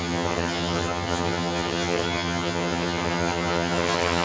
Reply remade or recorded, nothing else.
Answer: remade